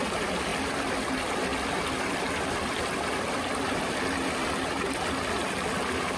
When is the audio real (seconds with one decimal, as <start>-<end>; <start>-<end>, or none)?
0.0-0.5; 1.1-6.2